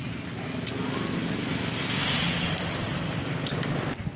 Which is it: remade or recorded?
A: recorded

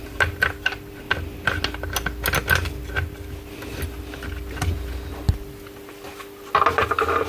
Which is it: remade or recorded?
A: recorded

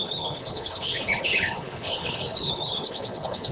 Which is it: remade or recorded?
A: remade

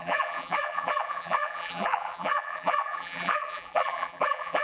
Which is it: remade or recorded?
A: remade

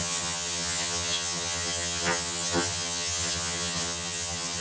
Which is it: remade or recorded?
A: remade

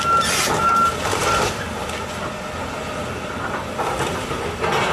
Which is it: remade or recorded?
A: recorded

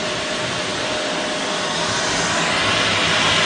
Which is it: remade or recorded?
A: remade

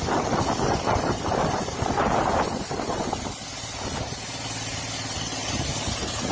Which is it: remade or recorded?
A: recorded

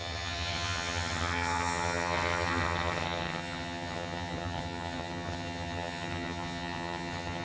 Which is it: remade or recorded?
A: remade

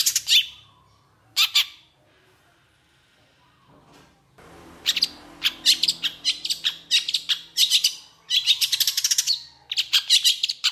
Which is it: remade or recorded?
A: recorded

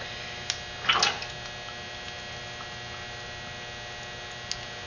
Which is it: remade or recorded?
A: recorded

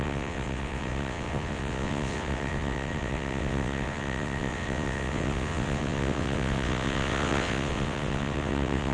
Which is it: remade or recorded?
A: remade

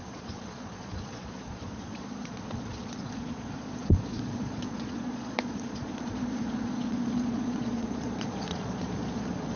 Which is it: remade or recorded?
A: remade